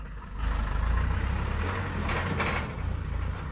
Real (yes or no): yes